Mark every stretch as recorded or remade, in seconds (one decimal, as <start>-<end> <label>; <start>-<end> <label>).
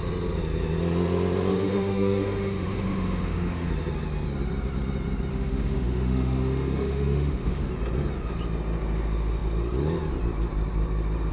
0.0-1.5 recorded; 1.5-3.7 remade; 3.7-5.3 recorded; 5.3-7.7 remade; 7.7-11.3 recorded